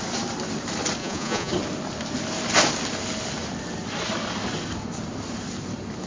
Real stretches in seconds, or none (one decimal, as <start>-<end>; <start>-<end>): 0.0-1.0; 1.5-6.1